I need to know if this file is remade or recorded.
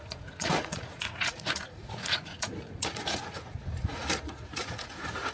remade